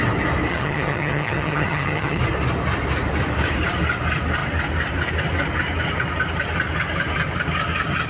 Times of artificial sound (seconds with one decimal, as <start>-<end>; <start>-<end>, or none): 0.5-2.2